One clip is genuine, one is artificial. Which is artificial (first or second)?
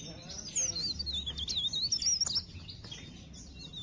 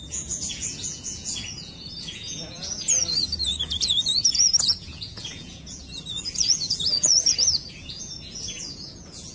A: second